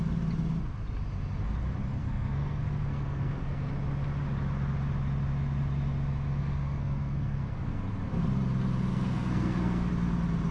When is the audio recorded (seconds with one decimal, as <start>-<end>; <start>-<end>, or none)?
0.0-2.0; 3.7-6.4; 7.8-8.9; 9.9-10.5